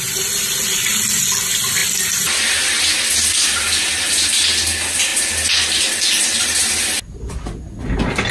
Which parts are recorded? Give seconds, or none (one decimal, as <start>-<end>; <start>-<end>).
0.0-8.3